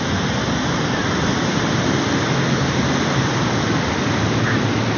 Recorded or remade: recorded